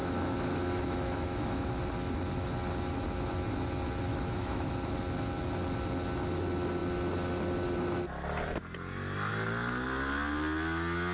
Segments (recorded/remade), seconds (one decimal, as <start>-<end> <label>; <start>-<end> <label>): 0.0-1.7 remade; 1.7-4.1 recorded; 4.1-4.7 remade; 4.7-11.1 recorded